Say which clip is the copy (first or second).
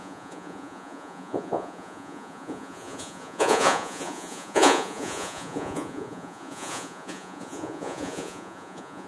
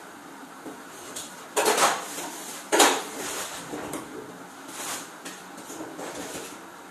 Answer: first